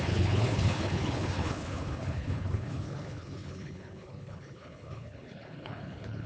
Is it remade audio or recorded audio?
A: remade